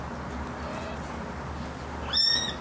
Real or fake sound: real